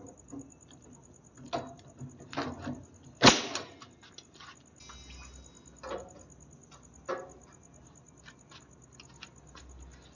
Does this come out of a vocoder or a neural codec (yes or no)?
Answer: no